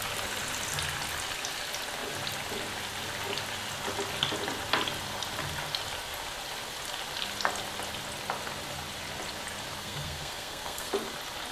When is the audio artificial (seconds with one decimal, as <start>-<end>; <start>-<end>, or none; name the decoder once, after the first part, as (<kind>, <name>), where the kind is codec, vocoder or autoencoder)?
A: 9.8-10.9 (codec, SNAC)

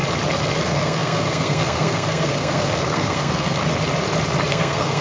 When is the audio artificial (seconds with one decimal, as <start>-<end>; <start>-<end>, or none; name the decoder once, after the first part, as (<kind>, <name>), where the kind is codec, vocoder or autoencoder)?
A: 0.6-3.6 (codec, SNAC); 4.5-5.0

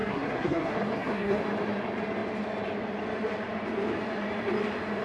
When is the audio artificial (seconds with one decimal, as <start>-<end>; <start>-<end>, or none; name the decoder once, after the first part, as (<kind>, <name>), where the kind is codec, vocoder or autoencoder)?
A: 0.0-1.4 (codec, SNAC)

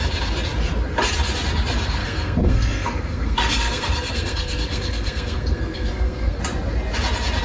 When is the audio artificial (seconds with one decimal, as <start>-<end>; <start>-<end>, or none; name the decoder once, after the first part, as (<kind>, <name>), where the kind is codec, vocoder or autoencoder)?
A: 2.0-6.4 (codec, SNAC)

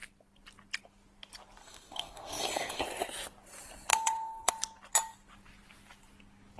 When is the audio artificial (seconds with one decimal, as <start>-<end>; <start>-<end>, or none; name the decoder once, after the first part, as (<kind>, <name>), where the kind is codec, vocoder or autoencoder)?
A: 1.6-2.8 (codec, SNAC); 3.9-4.5

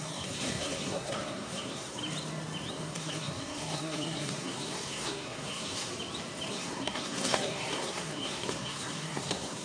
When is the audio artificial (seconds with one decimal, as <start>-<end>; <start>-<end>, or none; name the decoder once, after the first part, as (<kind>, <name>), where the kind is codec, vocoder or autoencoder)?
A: 0.0-2.0 (codec, SNAC); 2.7-5.9; 6.5-9.6

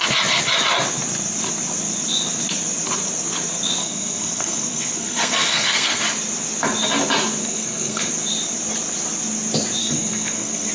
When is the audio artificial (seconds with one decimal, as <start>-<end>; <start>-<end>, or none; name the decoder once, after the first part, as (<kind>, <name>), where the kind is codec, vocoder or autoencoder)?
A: 3.8-6.0 (codec, SNAC); 7.4-8.1; 9.8-10.7